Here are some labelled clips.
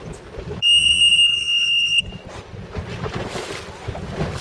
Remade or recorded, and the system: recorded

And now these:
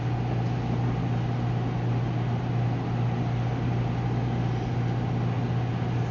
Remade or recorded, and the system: recorded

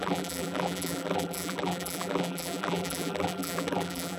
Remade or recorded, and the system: remade, vocoder, BigVGAN v2